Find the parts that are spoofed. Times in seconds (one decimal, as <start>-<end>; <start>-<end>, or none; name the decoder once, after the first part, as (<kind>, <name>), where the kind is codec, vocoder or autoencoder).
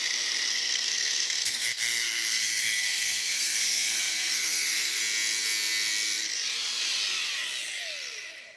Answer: 0.5-5.0 (codec, SNAC)